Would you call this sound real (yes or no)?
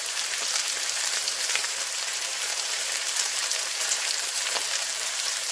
no